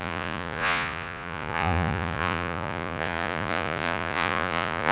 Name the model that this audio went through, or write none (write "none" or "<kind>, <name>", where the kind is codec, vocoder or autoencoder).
vocoder, Vocos